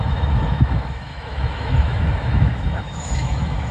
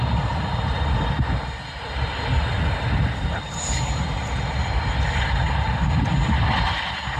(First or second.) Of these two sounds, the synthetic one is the first